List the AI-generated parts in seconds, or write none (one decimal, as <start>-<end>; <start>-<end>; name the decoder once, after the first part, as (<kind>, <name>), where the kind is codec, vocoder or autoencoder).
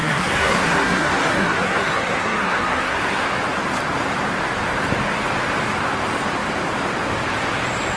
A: 0.0-3.0 (codec, SNAC)